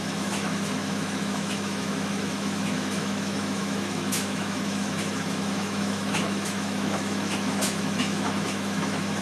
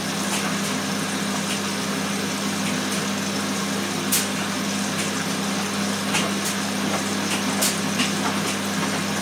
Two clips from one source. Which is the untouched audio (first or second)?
second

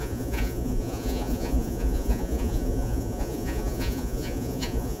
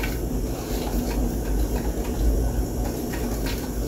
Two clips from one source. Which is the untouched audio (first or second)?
second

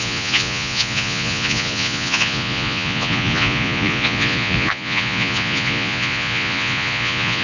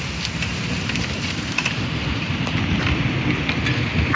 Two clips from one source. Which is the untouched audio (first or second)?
second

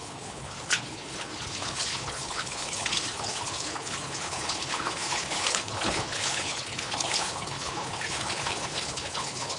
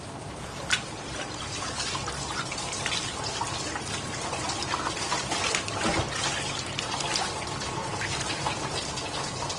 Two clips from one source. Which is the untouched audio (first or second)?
second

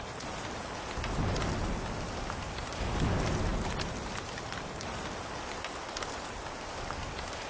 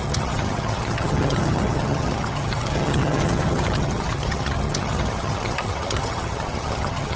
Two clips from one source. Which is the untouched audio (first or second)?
first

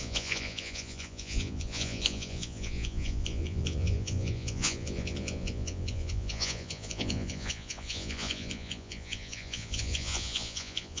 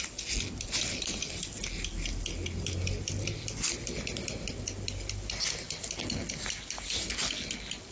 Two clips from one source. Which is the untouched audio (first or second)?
second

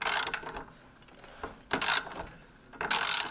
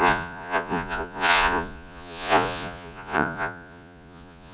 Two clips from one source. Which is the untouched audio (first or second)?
first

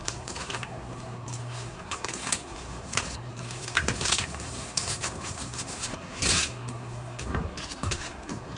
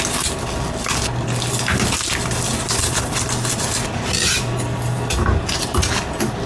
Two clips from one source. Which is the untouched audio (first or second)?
second